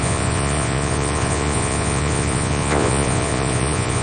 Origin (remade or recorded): remade